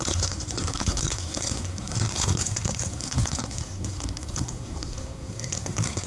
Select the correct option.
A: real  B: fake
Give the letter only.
B